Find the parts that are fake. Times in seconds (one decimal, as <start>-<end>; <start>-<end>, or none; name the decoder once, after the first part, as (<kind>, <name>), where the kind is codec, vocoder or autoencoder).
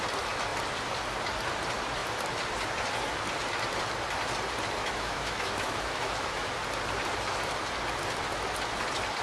4.8-6.5 (autoencoder, DAC-VAE)